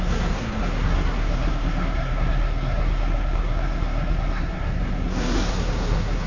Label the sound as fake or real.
fake